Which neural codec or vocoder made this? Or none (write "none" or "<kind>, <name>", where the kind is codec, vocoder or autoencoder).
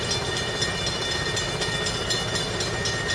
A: none